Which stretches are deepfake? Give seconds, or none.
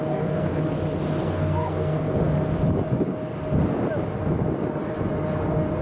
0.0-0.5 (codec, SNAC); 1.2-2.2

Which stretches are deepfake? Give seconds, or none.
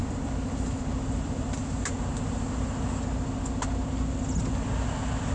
0.0-1.8 (vocoder, BigVGAN v2)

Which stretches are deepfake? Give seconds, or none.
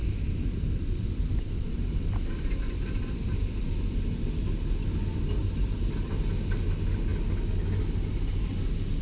0.0-4.0 (vocoder, BigVGAN v2); 5.4-6.2